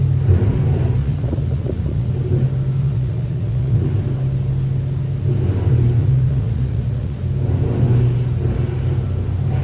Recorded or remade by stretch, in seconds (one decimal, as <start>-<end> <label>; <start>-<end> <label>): 0.0-1.0 recorded; 1.0-2.1 remade; 2.1-2.8 recorded; 2.8-3.9 remade; 3.9-6.0 recorded; 6.0-7.2 remade; 7.2-9.6 recorded